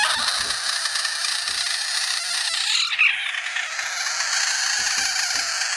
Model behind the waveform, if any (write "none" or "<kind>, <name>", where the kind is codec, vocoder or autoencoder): none